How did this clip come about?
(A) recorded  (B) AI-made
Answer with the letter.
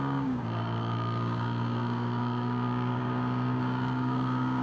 B